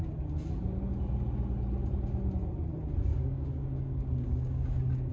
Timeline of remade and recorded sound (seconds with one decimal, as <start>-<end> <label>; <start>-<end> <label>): 0.0-3.1 recorded; 3.1-5.1 remade